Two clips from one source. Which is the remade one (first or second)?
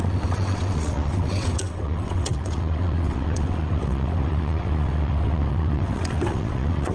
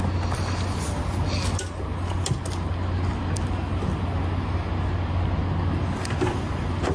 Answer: first